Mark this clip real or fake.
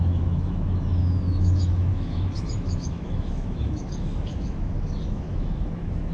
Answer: fake